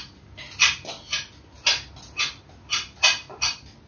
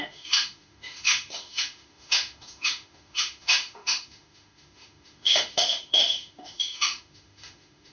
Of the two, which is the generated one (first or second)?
second